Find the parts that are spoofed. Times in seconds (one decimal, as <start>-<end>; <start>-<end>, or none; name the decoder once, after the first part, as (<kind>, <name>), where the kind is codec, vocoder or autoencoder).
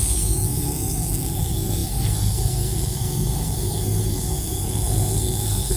0.0-5.8 (codec, SNAC)